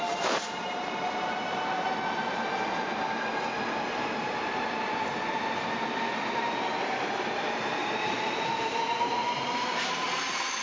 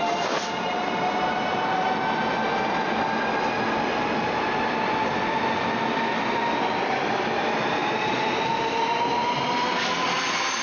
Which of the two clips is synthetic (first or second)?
first